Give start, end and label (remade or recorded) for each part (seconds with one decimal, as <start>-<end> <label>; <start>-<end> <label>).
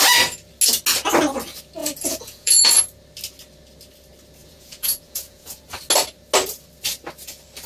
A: 0.0-1.8 recorded; 1.8-2.8 remade; 2.8-4.4 recorded; 4.4-5.6 remade; 5.6-7.7 recorded